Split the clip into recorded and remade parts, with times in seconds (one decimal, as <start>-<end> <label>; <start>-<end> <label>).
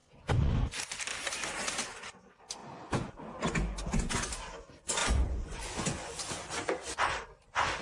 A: 0.0-0.5 remade; 0.5-2.6 recorded; 2.6-4.3 remade; 4.3-5.0 recorded; 5.0-6.2 remade; 6.2-7.8 recorded